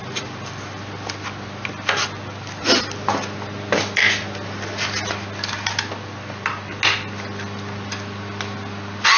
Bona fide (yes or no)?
yes